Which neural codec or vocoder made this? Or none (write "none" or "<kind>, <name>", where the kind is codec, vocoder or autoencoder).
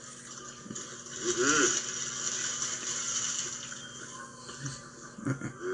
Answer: none